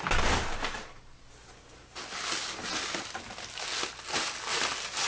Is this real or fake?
real